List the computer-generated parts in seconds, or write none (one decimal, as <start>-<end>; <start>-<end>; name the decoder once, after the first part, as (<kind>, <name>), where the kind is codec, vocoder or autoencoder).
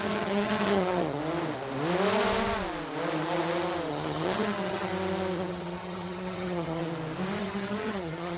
0.0-1.2 (vocoder, HiFi-GAN); 3.9-4.9; 5.5-6.8; 7.4-8.4